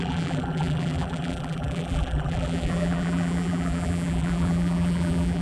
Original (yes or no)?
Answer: no